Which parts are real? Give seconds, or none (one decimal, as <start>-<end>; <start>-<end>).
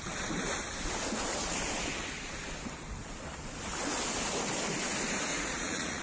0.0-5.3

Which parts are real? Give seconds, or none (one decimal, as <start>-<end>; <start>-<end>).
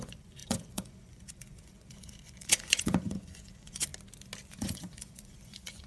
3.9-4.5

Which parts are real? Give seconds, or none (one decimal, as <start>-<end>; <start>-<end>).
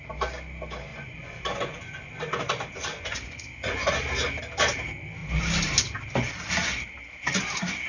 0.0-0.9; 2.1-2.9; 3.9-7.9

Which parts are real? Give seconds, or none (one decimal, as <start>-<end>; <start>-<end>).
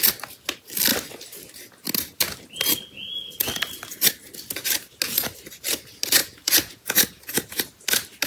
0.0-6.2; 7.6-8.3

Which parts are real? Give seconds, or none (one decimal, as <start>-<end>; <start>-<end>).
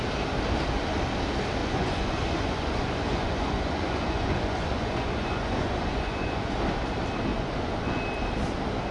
0.0-1.6; 6.5-7.3; 8.0-8.9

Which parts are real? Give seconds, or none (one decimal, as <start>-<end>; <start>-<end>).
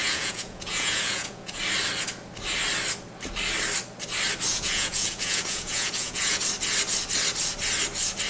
1.6-4.5; 6.4-8.3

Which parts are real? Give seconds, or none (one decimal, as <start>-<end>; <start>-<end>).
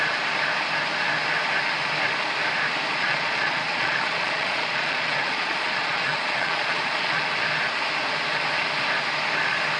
0.0-2.9; 7.2-9.8